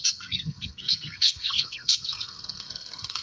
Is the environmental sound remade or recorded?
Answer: remade